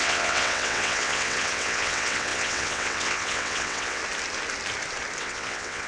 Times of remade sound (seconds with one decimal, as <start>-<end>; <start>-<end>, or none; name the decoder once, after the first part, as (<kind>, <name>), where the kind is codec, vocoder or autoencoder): 0.0-4.0 (vocoder, WaveNeXt); 5.2-5.9

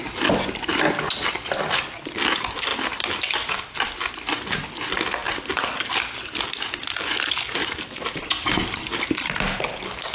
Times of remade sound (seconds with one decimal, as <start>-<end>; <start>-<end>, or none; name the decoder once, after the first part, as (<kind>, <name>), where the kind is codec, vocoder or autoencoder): 7.6-9.1 (vocoder, BigVGAN v2)

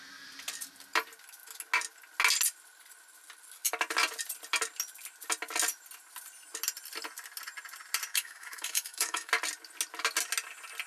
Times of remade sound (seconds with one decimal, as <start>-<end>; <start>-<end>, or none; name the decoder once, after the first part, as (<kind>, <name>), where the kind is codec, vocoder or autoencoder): 8.1-9.3 (autoencoder, DAC-VAE)